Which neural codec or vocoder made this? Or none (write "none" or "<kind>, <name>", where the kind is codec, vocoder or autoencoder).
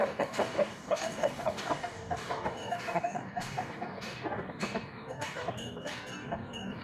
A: codec, DAC